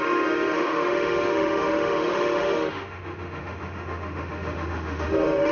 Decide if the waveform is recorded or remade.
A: remade